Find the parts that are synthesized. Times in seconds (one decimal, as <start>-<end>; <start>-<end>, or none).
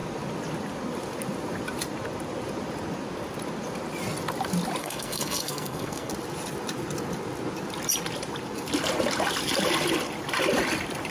4.8-6.1